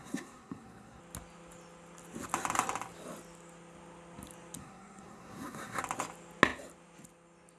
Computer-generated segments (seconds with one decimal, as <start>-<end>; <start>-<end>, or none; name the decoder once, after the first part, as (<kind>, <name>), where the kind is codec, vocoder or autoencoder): 0.0-1.0 (codec, SNAC); 4.6-5.8